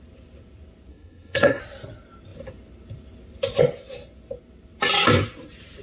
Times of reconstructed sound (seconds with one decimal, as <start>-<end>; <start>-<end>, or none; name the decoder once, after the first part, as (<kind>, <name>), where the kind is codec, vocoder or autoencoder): 0.9-1.6 (codec, SNAC)